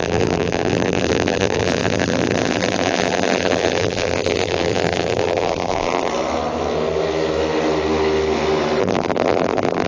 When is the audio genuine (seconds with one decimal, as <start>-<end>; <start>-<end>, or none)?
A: 6.1-8.8